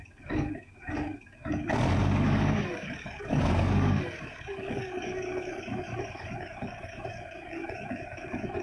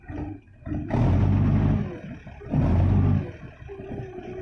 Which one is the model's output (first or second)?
first